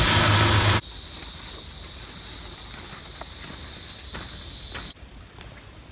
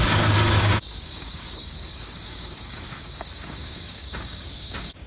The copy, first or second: second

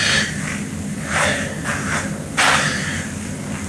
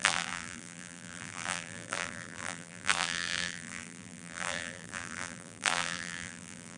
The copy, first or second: second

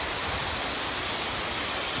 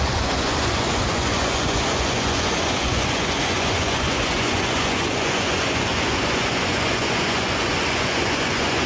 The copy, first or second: second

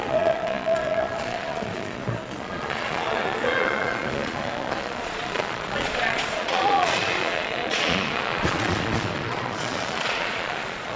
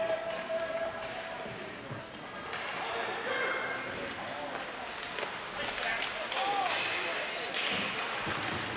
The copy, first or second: first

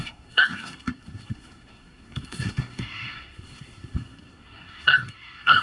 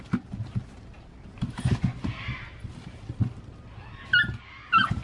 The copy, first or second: first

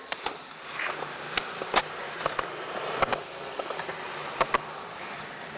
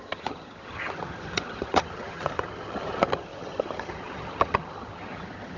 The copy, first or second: second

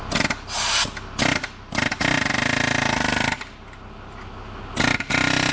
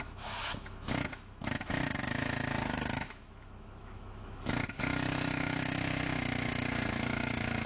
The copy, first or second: second